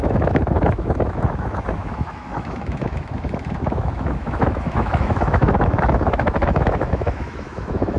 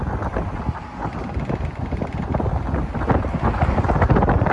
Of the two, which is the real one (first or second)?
second